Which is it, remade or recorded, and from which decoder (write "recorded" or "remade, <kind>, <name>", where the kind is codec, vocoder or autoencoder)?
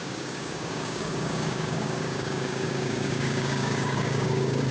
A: remade, codec, DAC